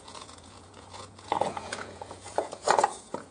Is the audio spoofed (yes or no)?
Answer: yes